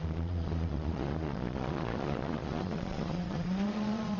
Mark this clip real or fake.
fake